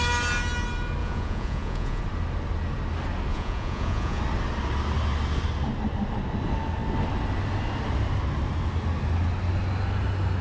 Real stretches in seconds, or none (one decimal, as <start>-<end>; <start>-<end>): 0.0-1.0; 2.0-3.3; 4.2-10.4